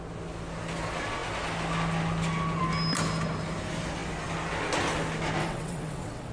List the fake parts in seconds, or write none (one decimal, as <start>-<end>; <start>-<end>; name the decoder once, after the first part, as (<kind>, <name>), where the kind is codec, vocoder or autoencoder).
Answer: 5.4-6.3 (vocoder, WaveNeXt)